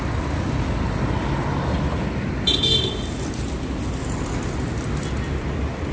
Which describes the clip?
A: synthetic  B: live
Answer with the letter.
B